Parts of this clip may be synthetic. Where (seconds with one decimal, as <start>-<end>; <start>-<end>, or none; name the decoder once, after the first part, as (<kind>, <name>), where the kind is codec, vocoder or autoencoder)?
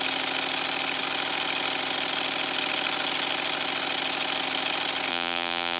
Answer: 5.1-5.8 (vocoder, BigVGAN v2)